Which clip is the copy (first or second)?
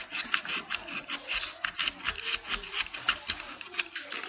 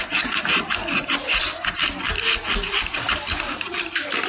second